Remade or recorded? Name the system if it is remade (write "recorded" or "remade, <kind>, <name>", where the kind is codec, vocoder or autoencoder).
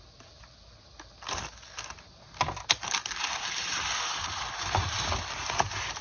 recorded